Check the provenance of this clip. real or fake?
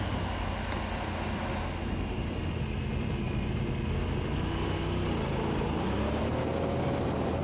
real